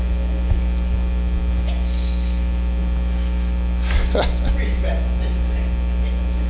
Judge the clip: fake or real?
real